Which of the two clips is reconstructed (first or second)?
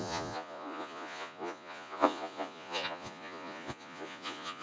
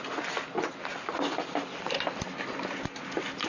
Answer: first